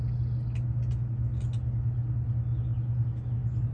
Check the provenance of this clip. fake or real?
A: real